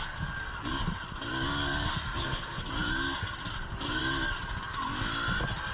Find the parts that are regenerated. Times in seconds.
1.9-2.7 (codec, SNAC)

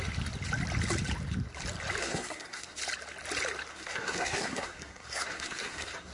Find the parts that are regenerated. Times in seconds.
2.0-2.8 (codec, SNAC); 3.7-6.1

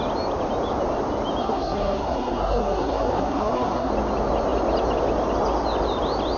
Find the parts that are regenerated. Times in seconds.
1.4-3.9 (codec, SNAC)

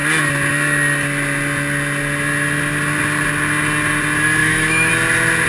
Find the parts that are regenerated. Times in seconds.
4.4-4.9 (autoencoder, DAC-VAE)

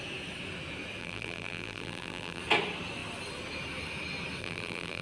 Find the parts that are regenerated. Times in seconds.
1.0-2.4 (vocoder, BigVGAN v2); 4.4-5.0

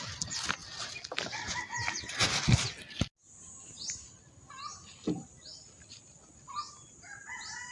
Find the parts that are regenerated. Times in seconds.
none

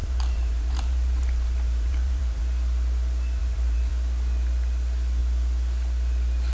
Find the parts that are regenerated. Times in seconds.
0.0-2.4 (vocoder, BigVGAN v2); 3.4-3.9